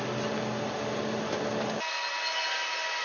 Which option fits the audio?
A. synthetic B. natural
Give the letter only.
B